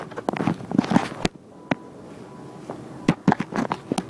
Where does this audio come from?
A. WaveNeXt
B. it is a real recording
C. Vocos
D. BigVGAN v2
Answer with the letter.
B